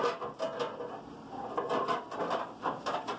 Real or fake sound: real